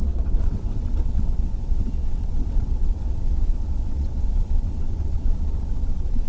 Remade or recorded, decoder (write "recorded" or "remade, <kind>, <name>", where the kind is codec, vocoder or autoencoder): remade, vocoder, WaveNeXt